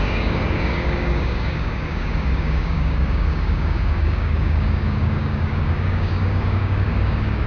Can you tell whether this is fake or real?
fake